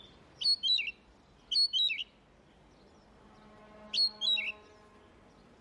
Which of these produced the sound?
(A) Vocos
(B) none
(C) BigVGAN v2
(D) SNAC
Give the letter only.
B